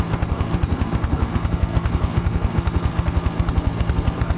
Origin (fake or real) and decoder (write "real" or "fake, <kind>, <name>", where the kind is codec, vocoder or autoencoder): fake, codec, SNAC